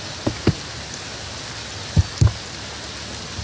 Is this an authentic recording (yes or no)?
yes